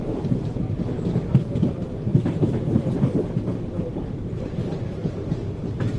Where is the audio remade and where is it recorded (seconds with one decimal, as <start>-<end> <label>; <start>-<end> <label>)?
0.0-1.7 recorded; 1.7-6.0 remade